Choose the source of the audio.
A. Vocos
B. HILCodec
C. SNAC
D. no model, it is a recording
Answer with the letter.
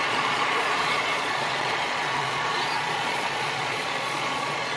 A